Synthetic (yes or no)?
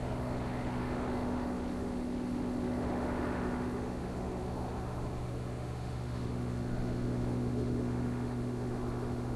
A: yes